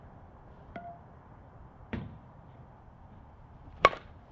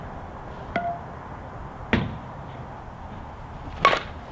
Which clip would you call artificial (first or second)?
first